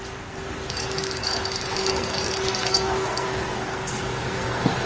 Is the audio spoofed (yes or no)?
yes